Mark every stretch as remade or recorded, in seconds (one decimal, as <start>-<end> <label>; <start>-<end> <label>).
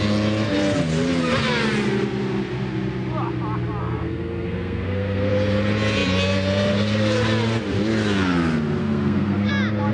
0.0-3.8 recorded; 3.8-5.3 remade; 5.3-8.8 recorded; 8.8-9.5 remade; 9.5-9.9 recorded